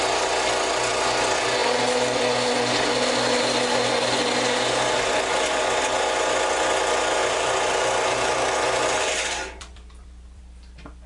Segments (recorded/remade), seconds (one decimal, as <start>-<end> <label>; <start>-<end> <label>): 0.0-7.2 recorded; 7.2-10.4 remade; 10.4-11.1 recorded